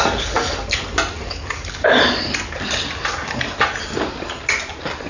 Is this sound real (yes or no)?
yes